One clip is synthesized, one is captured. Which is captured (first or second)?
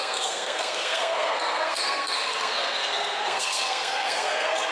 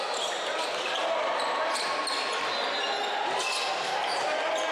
second